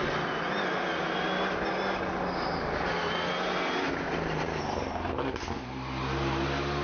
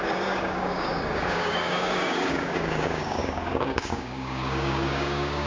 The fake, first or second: second